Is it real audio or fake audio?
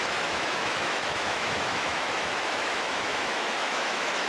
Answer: fake